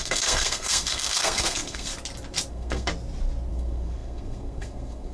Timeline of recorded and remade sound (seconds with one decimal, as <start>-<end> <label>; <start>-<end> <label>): 0.0-1.9 remade; 1.9-2.5 recorded; 2.5-2.9 remade; 2.9-3.5 recorded; 3.5-5.1 remade